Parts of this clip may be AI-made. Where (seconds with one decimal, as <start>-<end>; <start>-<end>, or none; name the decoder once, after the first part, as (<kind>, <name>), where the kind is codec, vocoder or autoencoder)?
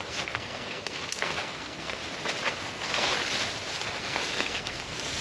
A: 0.0-2.0 (codec, SNAC); 2.5-3.2; 4.0-5.2